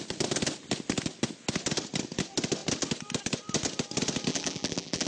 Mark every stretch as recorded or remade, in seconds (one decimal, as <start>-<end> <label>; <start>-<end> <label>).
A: 0.0-4.3 recorded; 4.3-5.1 remade

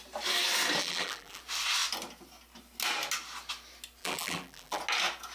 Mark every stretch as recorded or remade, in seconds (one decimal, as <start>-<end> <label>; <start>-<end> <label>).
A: 0.0-0.8 recorded; 0.8-1.4 remade; 1.4-4.0 recorded; 4.0-4.8 remade; 4.8-5.3 recorded